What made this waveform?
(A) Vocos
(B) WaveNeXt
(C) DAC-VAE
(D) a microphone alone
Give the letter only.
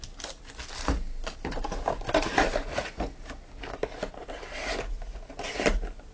D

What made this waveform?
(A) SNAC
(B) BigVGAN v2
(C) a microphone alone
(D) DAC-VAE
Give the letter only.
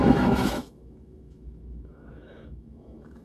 D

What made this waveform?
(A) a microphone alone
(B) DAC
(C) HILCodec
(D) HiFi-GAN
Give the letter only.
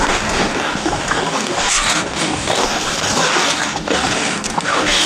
B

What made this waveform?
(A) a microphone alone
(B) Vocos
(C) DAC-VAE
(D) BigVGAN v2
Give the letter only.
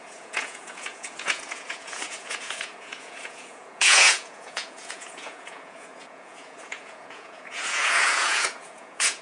B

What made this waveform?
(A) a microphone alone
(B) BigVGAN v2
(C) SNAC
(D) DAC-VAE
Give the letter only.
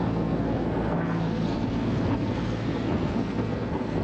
C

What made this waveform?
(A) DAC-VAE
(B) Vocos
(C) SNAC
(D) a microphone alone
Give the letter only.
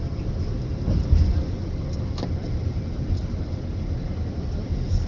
D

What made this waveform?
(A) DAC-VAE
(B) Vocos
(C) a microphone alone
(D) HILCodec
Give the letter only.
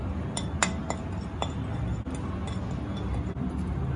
C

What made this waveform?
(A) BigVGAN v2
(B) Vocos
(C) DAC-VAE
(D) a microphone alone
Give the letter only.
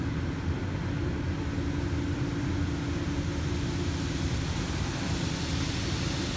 D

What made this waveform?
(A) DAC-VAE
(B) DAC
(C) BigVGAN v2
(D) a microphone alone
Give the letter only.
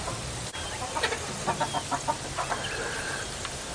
D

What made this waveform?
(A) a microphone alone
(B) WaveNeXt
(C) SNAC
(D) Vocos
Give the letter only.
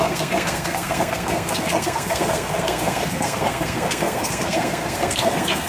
C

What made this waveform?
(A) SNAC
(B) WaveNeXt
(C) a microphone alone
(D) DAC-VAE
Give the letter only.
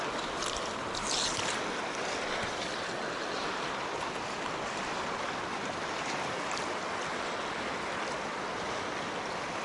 C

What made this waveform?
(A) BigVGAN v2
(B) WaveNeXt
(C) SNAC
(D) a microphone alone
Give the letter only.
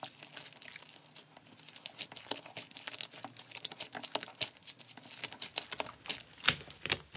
D